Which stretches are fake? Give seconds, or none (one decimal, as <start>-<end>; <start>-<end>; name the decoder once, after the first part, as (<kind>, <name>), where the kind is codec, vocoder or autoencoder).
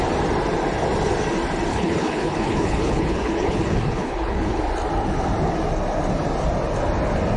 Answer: 1.7-4.6 (codec, HILCodec)